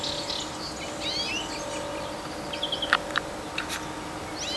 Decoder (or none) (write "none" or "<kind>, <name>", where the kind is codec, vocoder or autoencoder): none